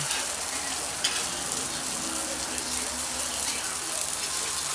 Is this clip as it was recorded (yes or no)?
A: yes